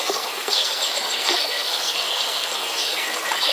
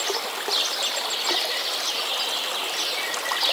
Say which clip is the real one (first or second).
second